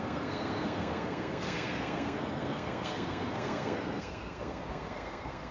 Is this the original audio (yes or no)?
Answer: no